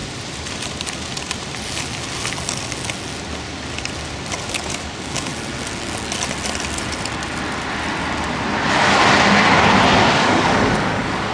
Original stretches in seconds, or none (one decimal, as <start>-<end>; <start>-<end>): 0.0-4.5; 5.3-10.1